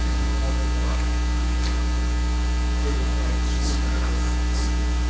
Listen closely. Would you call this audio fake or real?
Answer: real